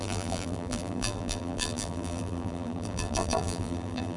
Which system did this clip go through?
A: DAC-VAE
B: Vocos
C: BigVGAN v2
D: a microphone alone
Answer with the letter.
C